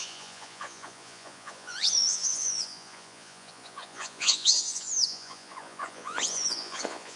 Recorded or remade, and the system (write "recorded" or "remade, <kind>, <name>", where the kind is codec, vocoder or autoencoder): remade, vocoder, Vocos